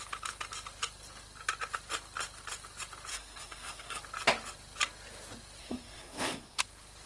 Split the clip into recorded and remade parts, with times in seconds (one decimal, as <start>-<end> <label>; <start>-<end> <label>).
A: 0.0-3.1 recorded; 3.1-4.0 remade; 4.0-5.6 recorded; 5.6-6.6 remade; 6.6-7.1 recorded

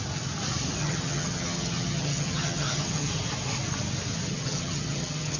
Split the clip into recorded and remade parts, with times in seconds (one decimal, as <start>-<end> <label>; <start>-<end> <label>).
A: 0.0-0.8 recorded; 0.8-3.1 remade; 3.1-4.3 recorded; 4.3-5.4 remade

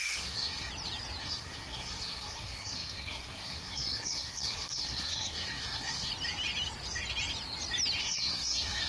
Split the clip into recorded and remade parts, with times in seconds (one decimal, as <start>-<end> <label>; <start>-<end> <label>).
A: 0.0-0.7 remade; 0.7-1.2 recorded; 1.2-6.1 remade; 6.1-8.0 recorded; 8.0-8.9 remade